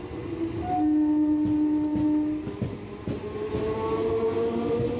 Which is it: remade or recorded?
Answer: recorded